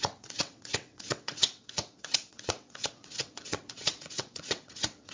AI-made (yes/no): yes